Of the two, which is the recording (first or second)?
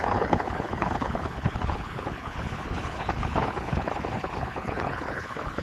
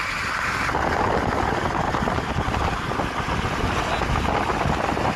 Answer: second